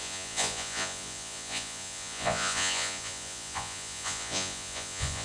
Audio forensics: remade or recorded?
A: remade